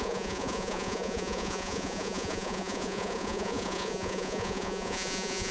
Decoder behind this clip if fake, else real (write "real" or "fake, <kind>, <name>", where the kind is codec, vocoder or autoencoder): fake, vocoder, Vocos